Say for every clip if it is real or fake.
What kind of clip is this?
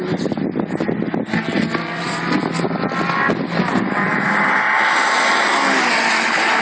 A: real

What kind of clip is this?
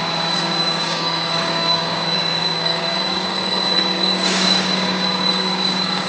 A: fake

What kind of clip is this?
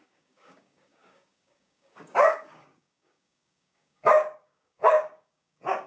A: fake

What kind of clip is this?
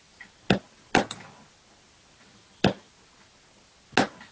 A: real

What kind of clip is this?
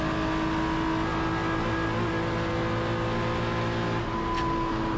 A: real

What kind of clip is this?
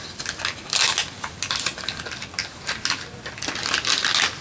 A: real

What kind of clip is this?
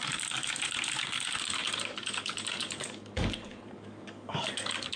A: fake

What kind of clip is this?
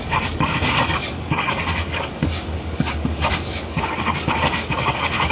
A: fake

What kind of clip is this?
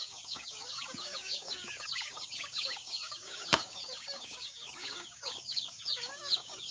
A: fake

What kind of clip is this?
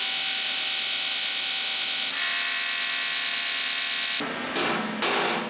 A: real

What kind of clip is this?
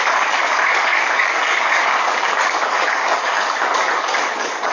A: fake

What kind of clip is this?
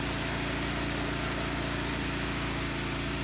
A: real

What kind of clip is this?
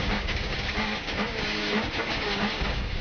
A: fake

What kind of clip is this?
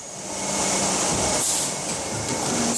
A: real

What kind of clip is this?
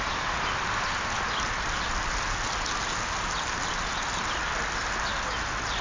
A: real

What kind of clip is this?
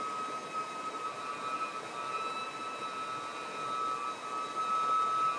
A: real